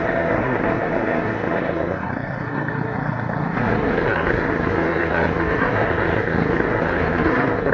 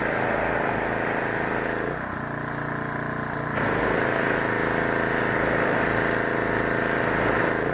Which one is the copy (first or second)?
first